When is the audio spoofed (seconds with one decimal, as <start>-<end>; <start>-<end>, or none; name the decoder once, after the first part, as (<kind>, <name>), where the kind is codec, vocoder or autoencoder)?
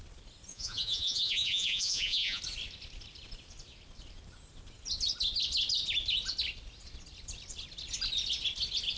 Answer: 0.5-2.4 (vocoder, Vocos)